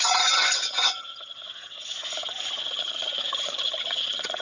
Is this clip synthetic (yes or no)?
yes